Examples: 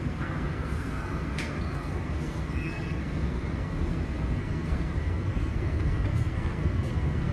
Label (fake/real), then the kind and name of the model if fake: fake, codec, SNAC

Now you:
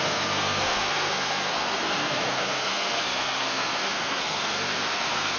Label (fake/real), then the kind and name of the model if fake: fake, codec, SNAC